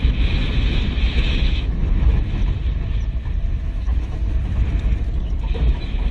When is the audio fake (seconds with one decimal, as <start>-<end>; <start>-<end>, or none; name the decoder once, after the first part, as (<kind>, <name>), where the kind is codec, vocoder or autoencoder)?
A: 0.0-2.4 (autoencoder, DAC-VAE); 3.6-4.2; 5.5-6.1